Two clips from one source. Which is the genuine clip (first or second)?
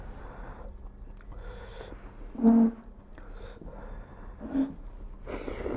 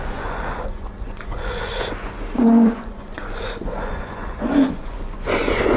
first